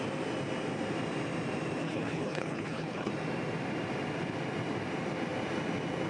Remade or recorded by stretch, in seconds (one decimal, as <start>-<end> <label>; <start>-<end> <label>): 0.0-1.8 recorded; 1.8-3.1 remade; 3.1-6.1 recorded